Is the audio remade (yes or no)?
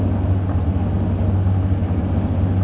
no